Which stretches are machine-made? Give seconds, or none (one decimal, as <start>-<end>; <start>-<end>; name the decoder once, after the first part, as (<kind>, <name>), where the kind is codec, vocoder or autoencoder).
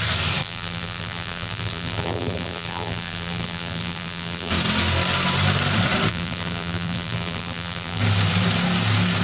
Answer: 0.4-4.5 (vocoder, BigVGAN v2); 6.1-8.0